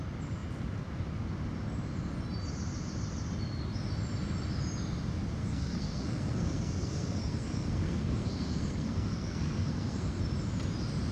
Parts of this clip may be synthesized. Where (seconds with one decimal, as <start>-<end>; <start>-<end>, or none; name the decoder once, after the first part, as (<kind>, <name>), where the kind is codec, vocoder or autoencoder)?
5.4-10.2 (codec, SNAC)